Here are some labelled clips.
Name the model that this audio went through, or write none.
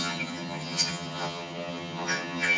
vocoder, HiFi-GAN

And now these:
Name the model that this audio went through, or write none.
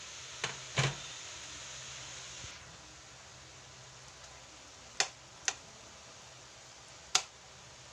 none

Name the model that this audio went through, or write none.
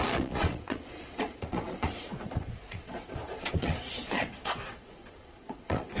vocoder, Vocos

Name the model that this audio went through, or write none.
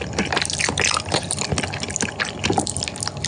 none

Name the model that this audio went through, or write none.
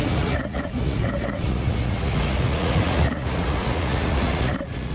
vocoder, Vocos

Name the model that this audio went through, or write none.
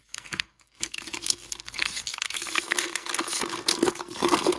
codec, SNAC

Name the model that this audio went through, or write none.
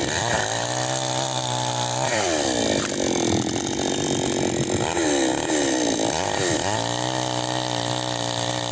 vocoder, BigVGAN v2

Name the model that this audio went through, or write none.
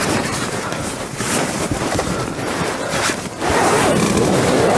vocoder, BigVGAN v2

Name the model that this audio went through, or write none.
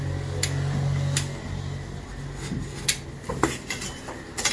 none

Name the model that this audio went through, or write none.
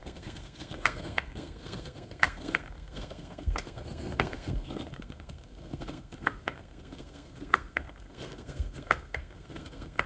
codec, SNAC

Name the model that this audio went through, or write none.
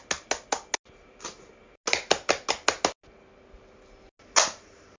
none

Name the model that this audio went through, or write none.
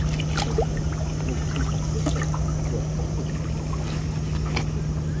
none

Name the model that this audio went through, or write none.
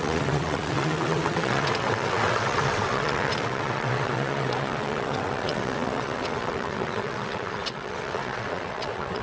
vocoder, WaveNeXt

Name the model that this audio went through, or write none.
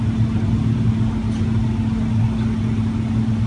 none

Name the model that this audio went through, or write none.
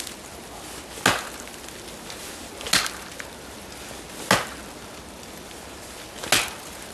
none